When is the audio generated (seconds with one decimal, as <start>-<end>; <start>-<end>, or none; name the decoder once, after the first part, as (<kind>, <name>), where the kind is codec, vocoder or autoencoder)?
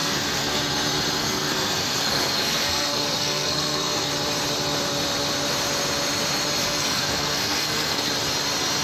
0.0-0.6 (codec, SNAC); 1.2-4.1; 6.6-8.1